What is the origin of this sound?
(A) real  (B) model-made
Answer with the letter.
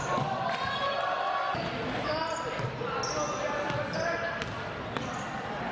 A